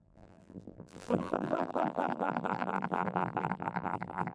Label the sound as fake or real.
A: fake